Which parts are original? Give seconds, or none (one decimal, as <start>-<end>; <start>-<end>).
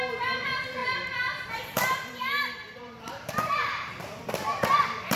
0.0-0.8; 3.9-5.2